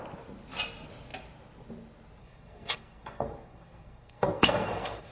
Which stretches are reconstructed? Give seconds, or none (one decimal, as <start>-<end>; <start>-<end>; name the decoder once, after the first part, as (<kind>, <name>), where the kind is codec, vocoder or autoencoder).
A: 2.2-5.1 (codec, SNAC)